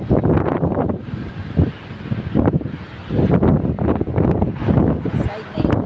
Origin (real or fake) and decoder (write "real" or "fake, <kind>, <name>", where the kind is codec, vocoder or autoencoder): real